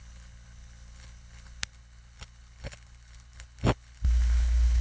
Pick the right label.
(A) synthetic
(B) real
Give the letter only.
A